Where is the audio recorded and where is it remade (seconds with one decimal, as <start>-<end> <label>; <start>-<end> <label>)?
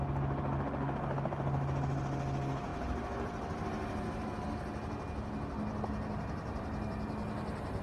0.0-2.7 recorded; 2.7-4.3 remade; 4.3-7.8 recorded